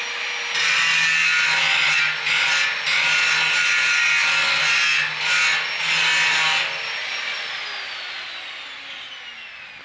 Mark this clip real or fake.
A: real